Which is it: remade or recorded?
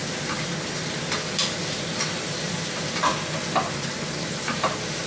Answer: recorded